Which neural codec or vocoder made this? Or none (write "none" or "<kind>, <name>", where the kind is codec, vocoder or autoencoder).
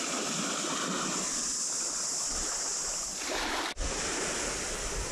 none